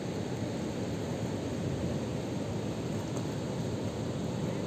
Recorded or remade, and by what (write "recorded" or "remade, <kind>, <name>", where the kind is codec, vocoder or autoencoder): recorded